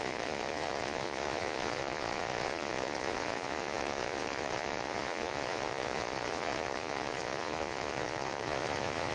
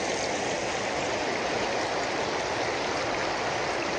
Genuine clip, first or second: second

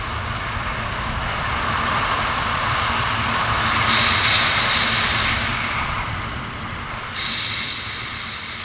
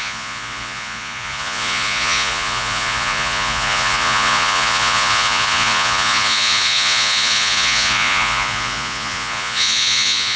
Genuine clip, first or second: first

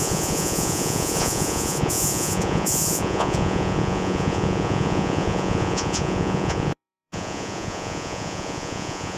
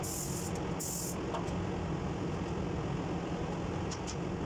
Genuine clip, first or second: second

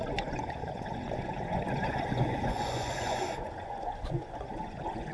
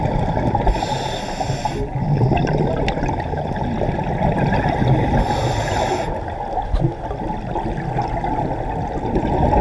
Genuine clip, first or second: second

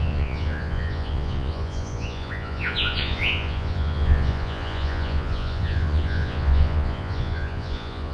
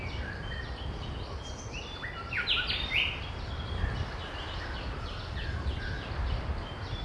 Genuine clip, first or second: second